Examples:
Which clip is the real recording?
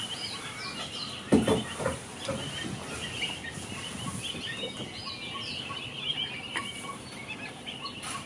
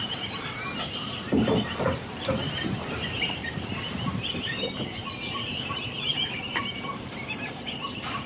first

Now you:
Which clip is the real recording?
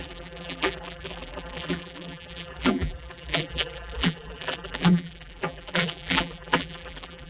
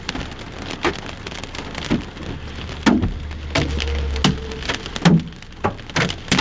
second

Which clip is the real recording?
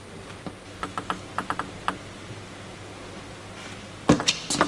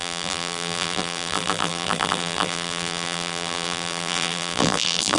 first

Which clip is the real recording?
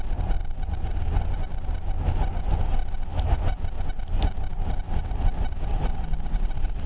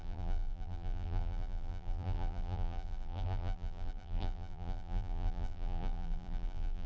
first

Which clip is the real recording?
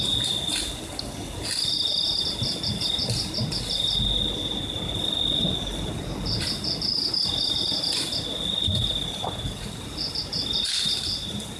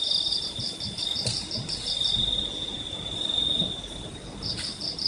first